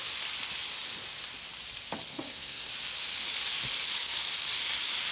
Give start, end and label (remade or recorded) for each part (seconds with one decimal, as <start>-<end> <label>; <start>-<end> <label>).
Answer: 0.0-2.1 recorded; 2.1-2.7 remade; 2.7-5.1 recorded